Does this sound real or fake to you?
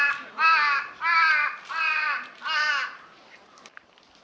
real